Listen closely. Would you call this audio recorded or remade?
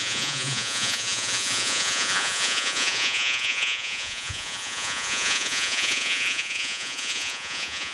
remade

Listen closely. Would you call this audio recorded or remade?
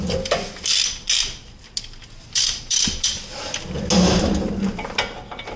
recorded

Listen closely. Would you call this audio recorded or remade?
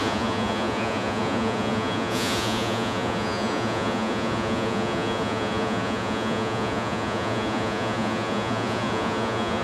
remade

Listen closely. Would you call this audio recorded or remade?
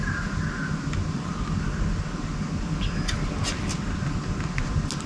recorded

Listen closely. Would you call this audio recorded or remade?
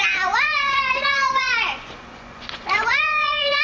remade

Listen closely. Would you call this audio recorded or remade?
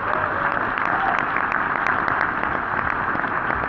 recorded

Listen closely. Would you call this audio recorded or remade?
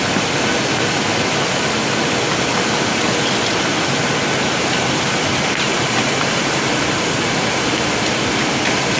recorded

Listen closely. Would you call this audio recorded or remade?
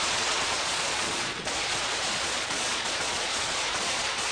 remade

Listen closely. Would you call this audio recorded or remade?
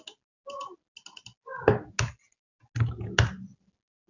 recorded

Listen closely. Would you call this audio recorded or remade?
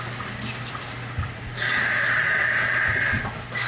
recorded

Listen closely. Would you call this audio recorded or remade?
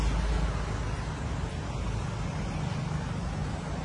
recorded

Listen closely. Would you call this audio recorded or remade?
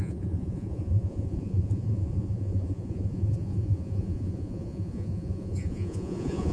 remade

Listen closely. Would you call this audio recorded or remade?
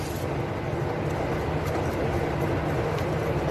recorded